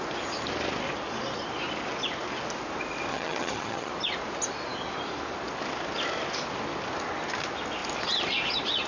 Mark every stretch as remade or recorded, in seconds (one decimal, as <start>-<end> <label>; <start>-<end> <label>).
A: 0.0-3.1 recorded; 3.1-3.9 remade; 3.9-8.9 recorded